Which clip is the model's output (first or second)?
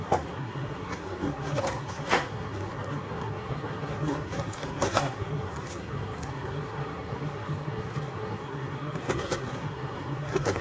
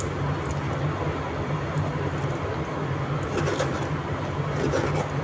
first